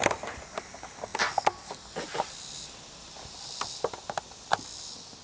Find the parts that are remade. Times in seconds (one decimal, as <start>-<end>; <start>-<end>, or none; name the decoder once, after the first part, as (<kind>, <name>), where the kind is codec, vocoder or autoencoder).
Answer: none